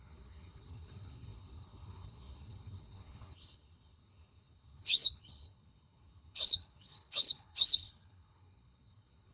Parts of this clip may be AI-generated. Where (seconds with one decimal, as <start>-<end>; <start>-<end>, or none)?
0.0-9.3

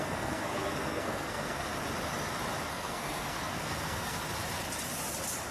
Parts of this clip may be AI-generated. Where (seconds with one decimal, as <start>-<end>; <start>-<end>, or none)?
0.0-1.7; 2.7-4.2

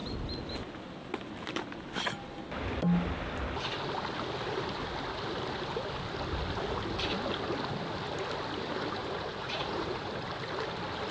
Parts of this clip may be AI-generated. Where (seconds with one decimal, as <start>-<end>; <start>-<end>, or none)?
9.0-10.1

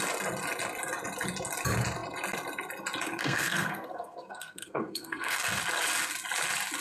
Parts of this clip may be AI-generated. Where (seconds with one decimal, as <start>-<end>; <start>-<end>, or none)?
3.2-5.6